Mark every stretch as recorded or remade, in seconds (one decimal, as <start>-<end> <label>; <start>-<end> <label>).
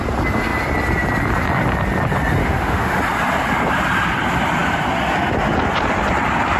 0.0-2.4 recorded; 2.4-3.0 remade; 3.0-6.6 recorded